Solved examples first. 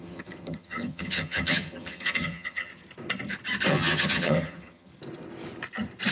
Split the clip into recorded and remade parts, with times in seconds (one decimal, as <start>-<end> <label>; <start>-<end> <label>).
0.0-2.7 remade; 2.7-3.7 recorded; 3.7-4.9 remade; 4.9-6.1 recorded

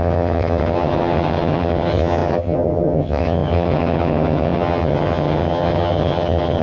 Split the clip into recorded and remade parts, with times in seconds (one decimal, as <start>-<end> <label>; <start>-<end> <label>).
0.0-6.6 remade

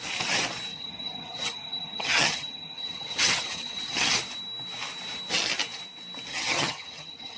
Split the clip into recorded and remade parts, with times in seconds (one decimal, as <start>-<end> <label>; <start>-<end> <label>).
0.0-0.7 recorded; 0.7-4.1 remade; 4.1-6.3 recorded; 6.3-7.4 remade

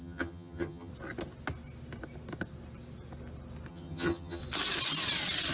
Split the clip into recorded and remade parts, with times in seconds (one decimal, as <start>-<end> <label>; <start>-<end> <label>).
0.0-0.9 remade; 0.9-3.7 recorded; 3.7-4.4 remade; 4.4-5.5 recorded

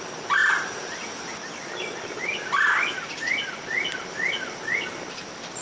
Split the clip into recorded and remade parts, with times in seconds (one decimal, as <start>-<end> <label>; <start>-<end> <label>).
0.0-5.6 recorded

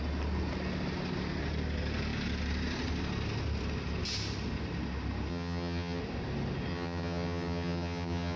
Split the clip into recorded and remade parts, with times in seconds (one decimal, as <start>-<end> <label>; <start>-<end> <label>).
0.0-5.3 recorded; 5.3-6.0 remade; 6.0-6.7 recorded; 6.7-8.4 remade

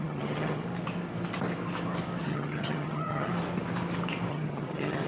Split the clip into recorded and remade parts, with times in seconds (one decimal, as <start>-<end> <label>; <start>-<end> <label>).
0.0-0.6 remade; 0.6-2.2 recorded; 2.2-3.3 remade; 3.3-4.3 recorded; 4.3-5.1 remade

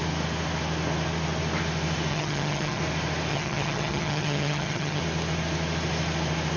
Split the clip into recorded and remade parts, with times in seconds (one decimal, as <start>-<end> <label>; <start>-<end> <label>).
0.0-2.1 recorded; 2.1-2.8 remade; 2.8-3.3 recorded; 3.3-5.0 remade; 5.0-6.6 recorded